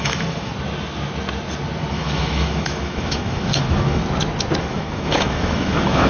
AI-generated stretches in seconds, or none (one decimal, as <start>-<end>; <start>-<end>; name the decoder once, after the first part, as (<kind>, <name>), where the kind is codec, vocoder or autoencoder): 0.0-0.5 (autoencoder, DAC-VAE); 1.9-4.0; 4.6-6.1

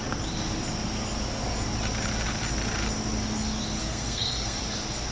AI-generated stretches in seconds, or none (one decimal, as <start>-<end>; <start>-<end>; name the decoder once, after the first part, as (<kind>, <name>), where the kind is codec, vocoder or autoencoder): 3.8-4.6 (codec, SNAC)

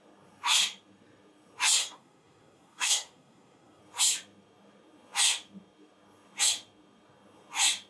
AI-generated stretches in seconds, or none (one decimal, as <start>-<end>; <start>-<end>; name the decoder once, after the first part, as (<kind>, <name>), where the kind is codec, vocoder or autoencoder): 1.8-3.8 (codec, SNAC)

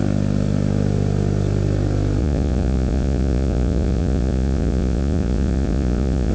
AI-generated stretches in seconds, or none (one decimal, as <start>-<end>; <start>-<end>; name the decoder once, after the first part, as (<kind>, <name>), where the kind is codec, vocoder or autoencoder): 2.2-6.3 (vocoder, Vocos)

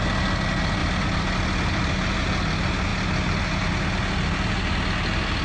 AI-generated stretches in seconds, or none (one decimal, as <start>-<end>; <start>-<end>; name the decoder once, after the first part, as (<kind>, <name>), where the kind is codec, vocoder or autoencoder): 0.8-1.9 (vocoder, BigVGAN v2)